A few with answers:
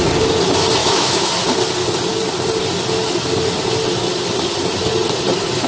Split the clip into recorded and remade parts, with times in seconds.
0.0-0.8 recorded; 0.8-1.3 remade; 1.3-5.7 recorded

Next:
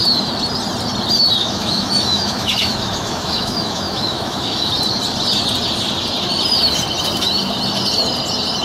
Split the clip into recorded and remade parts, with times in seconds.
0.0-1.4 recorded; 1.4-4.7 remade; 4.7-8.6 recorded